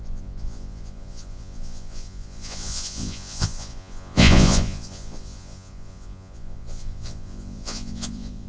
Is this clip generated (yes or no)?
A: yes